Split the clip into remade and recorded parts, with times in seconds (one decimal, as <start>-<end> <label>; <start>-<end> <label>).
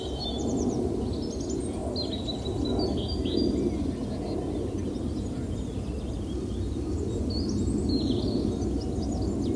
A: 0.0-9.6 recorded